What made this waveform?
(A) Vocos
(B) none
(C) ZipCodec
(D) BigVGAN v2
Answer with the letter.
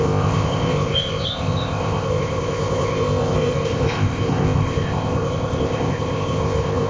C